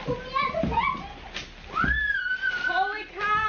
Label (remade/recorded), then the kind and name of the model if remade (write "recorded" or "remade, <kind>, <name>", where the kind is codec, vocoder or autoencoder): recorded